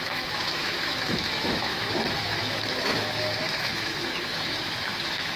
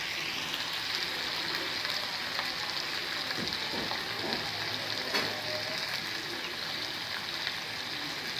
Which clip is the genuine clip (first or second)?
second